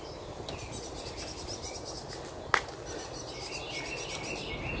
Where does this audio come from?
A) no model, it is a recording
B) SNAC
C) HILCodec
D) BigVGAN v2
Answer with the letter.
A